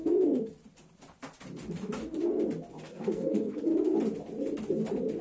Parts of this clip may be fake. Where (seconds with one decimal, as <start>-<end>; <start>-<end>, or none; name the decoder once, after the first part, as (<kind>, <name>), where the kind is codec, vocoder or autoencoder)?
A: 0.0-0.5 (codec, SNAC); 2.9-3.7